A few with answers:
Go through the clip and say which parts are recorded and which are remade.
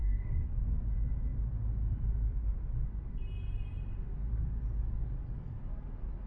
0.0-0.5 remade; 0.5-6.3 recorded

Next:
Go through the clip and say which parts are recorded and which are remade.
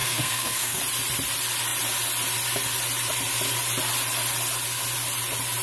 0.0-0.8 remade; 0.8-5.6 recorded